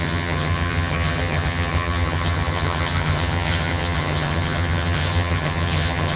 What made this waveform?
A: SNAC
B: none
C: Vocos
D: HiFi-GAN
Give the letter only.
D